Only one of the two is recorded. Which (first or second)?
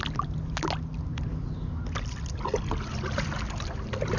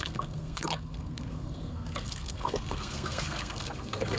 first